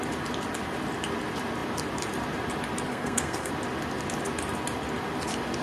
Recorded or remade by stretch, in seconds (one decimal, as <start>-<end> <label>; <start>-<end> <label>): 0.0-2.9 recorded; 2.9-3.5 remade; 3.5-5.6 recorded